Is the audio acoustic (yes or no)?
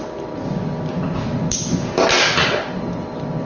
yes